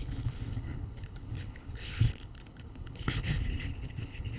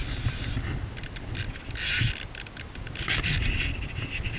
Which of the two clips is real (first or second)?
second